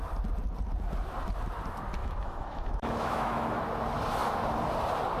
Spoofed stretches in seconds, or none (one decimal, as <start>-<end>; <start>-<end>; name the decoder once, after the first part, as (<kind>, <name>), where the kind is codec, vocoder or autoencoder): 2.0-3.6 (autoencoder, DAC-VAE)